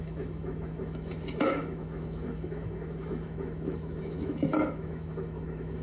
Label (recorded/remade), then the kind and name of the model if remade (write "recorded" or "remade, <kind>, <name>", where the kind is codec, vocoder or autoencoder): remade, autoencoder, DAC-VAE